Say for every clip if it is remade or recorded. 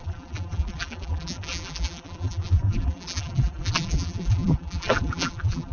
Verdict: remade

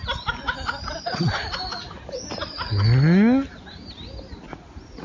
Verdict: recorded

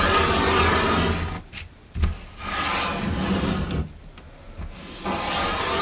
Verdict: recorded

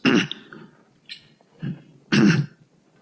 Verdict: recorded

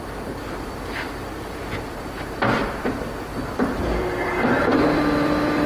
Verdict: remade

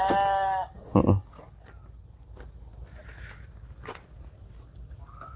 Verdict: recorded